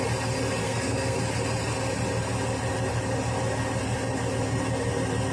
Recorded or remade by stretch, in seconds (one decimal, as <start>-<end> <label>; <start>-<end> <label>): 0.0-0.6 recorded; 0.6-1.2 remade; 1.2-5.3 recorded